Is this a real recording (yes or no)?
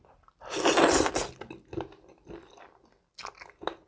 yes